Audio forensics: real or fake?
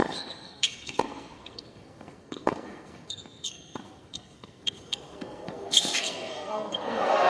fake